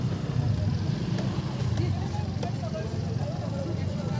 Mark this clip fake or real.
real